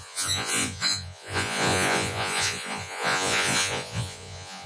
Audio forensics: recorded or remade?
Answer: remade